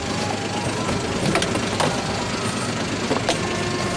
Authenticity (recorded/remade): recorded